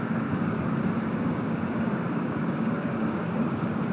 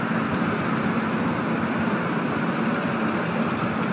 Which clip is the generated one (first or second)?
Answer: first